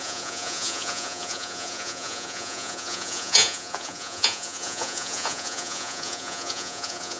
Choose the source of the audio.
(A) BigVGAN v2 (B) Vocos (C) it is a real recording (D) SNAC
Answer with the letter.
B